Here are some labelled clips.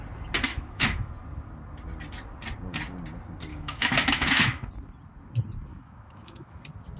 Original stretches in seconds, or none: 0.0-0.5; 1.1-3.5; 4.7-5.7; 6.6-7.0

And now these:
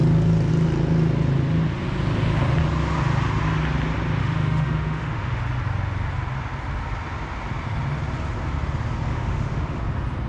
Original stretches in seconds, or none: 0.0-4.2; 5.4-9.1; 9.8-10.3

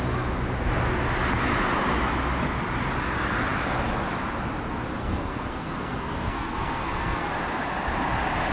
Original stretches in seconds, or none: 0.0-5.0; 7.3-8.5

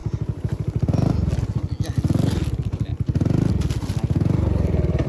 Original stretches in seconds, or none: 0.0-5.1

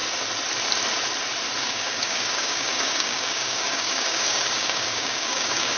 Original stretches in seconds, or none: 0.0-1.6

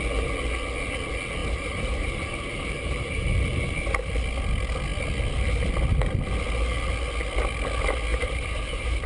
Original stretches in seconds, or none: 0.0-1.4; 4.1-8.1

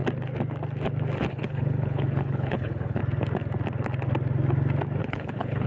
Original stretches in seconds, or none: 0.0-1.3; 3.0-5.0